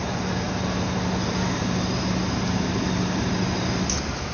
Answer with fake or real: real